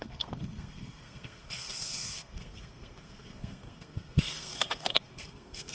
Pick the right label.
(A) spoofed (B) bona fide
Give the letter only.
A